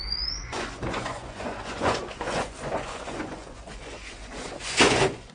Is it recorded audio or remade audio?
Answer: remade